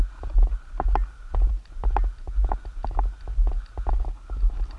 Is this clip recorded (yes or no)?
yes